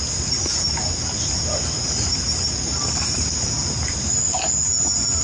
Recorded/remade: recorded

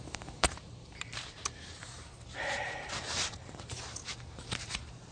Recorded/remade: remade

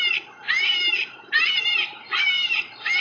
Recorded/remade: remade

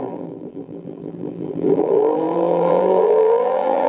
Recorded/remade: remade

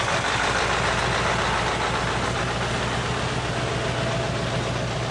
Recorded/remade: recorded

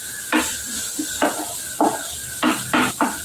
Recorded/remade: recorded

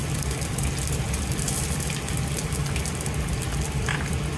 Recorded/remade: recorded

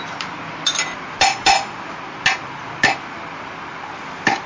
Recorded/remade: recorded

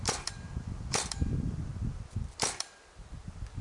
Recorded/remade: remade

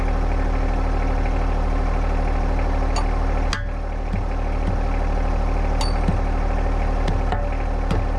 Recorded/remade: recorded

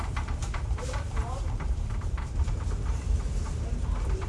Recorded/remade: remade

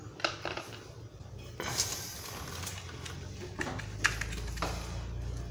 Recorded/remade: recorded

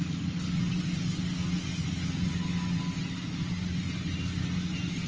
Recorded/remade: recorded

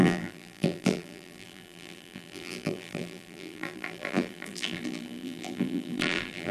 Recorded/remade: remade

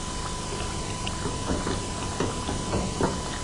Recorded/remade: recorded